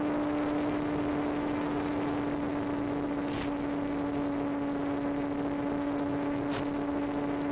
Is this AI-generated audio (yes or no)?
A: no